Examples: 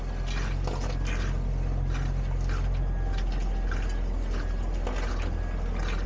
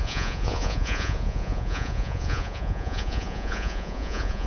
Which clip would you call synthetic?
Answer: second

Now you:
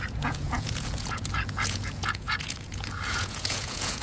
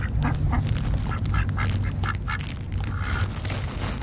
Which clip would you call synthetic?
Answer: first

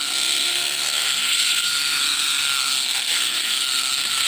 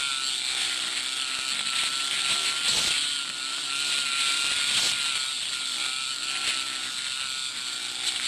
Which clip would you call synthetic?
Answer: first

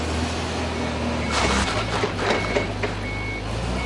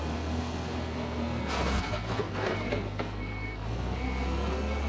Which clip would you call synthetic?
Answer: second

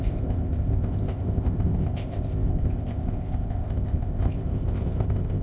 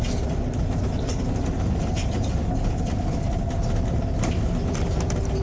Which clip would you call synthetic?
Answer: first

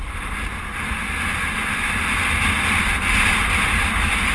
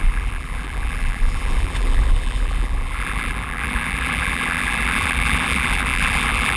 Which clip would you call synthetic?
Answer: second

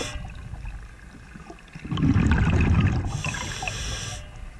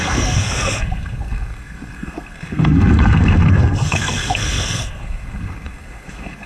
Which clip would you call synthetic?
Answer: second